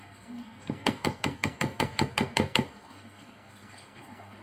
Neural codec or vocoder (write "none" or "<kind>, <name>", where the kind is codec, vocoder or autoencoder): codec, SNAC